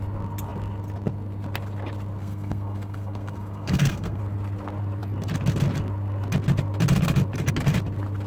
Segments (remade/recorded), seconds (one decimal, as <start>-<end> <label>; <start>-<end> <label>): 0.0-2.2 recorded; 2.2-4.2 remade; 4.2-8.3 recorded